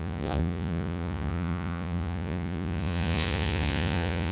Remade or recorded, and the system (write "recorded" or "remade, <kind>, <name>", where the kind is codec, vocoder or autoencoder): remade, vocoder, Vocos